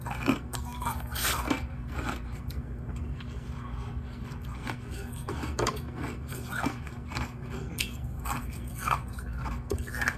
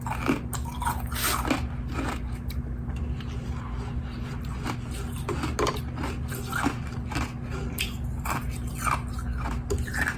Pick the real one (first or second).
second